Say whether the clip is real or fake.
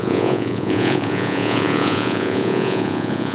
fake